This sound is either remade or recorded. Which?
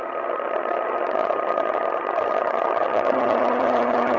remade